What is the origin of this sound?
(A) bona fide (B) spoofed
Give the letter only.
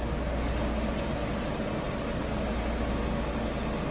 A